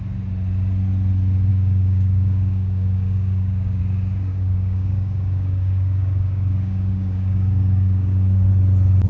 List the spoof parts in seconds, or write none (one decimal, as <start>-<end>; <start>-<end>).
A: 1.5-3.8; 4.3-8.5